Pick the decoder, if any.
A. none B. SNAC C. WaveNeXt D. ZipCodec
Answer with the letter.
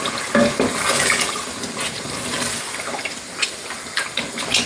A